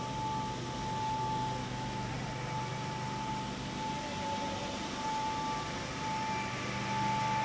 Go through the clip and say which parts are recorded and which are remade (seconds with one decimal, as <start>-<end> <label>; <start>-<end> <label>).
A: 0.0-1.6 recorded; 1.6-2.1 remade; 2.1-7.4 recorded